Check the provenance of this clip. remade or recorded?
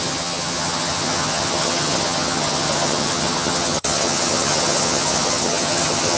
remade